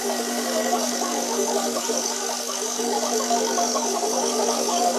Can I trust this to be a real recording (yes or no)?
no